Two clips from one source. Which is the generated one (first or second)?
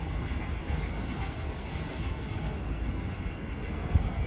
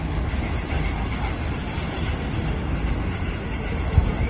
first